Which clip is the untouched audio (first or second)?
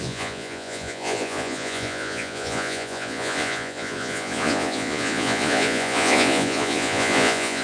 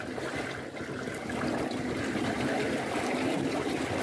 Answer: second